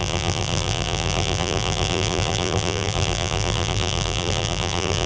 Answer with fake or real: fake